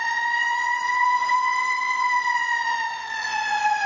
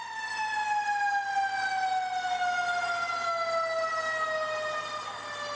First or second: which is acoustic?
second